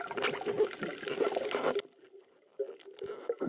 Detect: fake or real real